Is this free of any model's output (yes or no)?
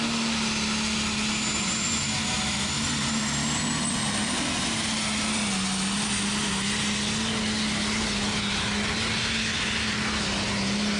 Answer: yes